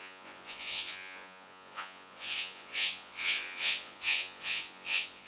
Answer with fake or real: fake